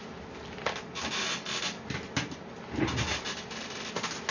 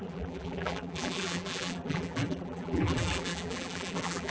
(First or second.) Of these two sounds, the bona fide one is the first